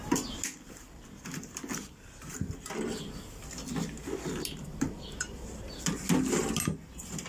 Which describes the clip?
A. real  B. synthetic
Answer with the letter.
A